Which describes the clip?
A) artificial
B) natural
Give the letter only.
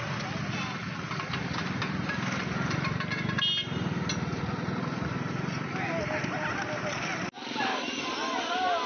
B